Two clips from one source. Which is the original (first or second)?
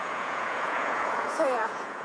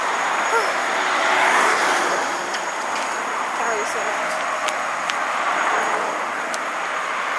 second